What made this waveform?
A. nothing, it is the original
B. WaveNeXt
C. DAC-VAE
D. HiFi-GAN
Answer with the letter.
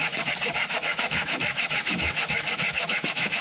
C